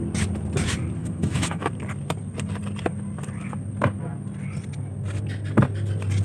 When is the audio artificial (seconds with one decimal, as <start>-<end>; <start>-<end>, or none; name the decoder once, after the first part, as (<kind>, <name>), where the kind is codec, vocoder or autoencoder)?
1.0-1.7 (autoencoder, DAC-VAE)